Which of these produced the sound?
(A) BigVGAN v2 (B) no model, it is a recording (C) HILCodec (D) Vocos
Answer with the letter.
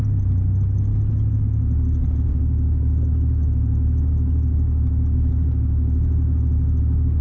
B